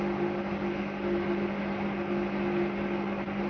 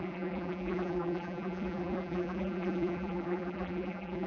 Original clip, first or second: first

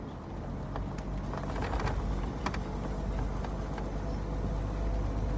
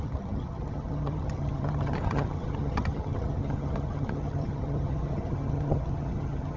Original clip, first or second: first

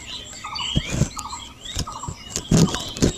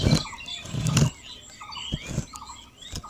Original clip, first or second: second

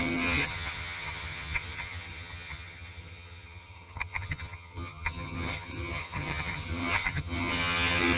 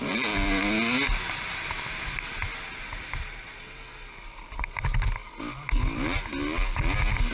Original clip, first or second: second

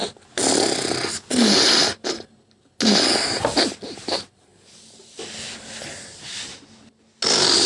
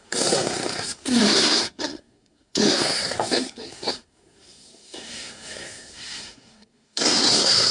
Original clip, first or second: first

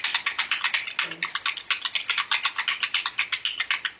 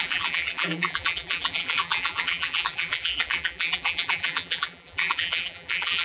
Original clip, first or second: first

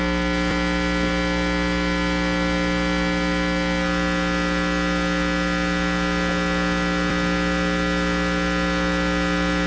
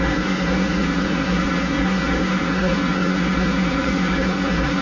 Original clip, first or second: first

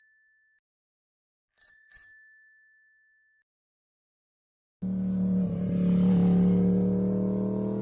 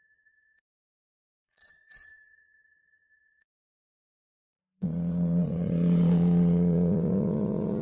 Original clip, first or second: first